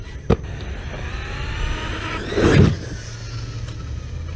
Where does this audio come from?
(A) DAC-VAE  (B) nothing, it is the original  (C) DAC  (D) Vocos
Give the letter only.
B